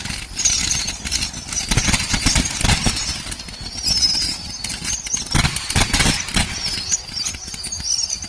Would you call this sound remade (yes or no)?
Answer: no